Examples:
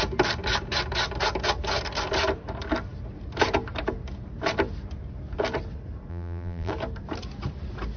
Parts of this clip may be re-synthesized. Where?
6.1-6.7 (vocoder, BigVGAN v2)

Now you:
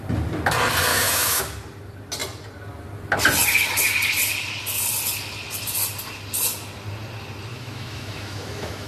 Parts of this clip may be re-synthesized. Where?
0.9-1.4 (autoencoder, DAC-VAE); 7.5-8.9

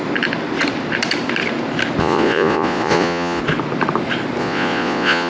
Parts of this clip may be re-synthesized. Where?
2.0-3.4 (vocoder, Vocos); 4.4-5.3

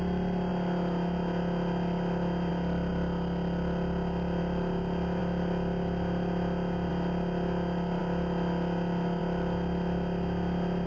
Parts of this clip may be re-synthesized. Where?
none

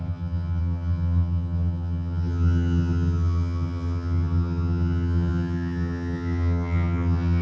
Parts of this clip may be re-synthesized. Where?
0.0-7.4 (vocoder, HiFi-GAN)

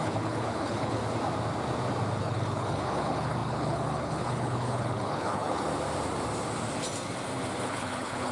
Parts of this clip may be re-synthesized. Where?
0.0-1.0 (codec, HILCodec); 2.2-5.7; 7.6-8.3